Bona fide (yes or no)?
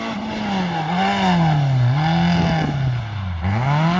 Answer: yes